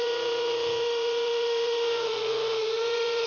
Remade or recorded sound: remade